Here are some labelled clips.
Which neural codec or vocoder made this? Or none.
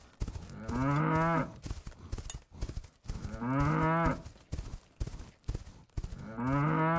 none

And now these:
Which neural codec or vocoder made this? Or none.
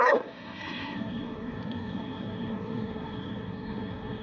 codec, SNAC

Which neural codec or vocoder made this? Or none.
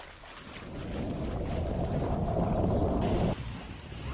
none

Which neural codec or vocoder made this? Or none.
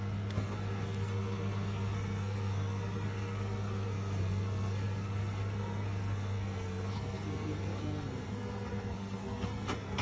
codec, SNAC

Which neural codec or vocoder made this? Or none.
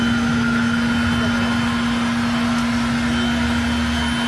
none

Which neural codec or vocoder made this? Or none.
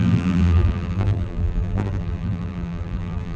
vocoder, BigVGAN v2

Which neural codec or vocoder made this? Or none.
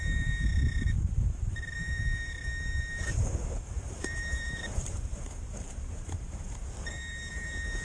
vocoder, BigVGAN v2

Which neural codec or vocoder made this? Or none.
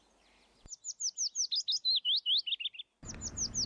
none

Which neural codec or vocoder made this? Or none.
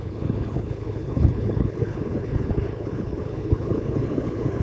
codec, HILCodec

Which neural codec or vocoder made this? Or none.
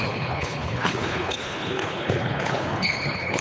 codec, HILCodec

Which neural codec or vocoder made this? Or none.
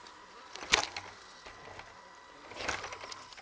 none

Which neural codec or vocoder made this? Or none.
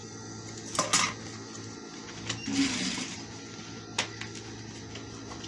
none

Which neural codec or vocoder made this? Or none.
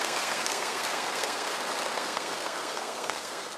codec, SNAC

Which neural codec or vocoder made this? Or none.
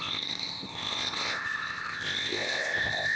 codec, ZipCodec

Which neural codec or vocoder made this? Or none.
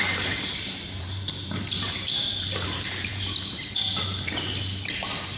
vocoder, BigVGAN v2